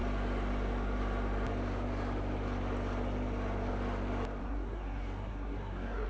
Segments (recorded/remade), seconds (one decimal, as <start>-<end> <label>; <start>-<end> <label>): 0.0-4.4 recorded; 4.4-6.1 remade